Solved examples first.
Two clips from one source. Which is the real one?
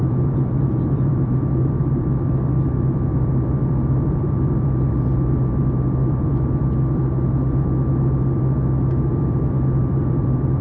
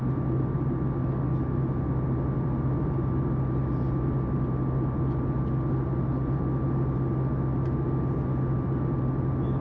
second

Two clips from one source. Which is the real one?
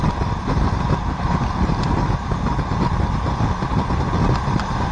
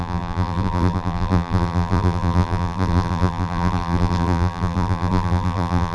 first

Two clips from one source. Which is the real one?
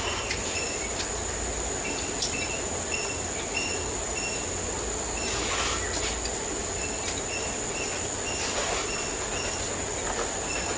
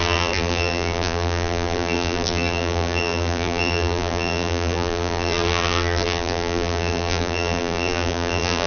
first